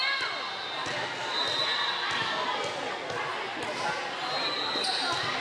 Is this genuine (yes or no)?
yes